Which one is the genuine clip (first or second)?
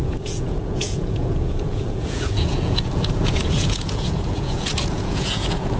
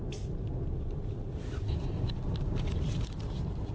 second